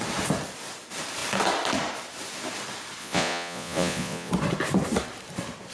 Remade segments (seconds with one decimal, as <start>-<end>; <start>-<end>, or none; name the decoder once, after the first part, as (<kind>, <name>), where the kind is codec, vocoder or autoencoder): 3.0-4.3 (vocoder, Vocos)